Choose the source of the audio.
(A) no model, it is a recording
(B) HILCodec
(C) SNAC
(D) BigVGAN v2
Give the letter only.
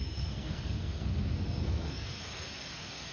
C